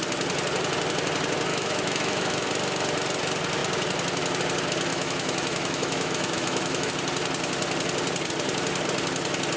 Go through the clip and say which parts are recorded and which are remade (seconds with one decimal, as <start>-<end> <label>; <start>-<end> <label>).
0.0-1.5 recorded; 1.5-2.4 remade; 2.4-4.9 recorded; 4.9-6.9 remade; 6.9-9.6 recorded